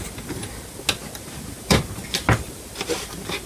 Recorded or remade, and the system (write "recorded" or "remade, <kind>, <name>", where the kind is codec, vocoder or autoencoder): recorded